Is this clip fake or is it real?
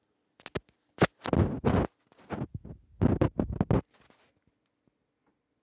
real